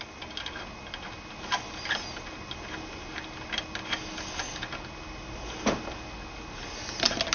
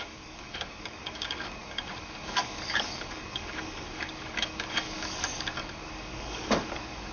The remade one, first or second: second